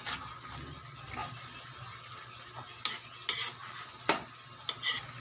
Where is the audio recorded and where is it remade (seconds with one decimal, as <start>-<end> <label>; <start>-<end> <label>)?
0.0-5.2 recorded